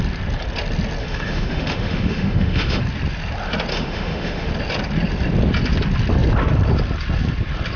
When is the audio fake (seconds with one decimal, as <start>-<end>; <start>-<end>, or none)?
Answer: 1.0-2.8; 3.7-4.5